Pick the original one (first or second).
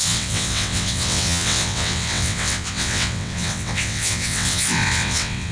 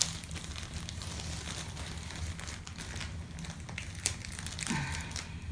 second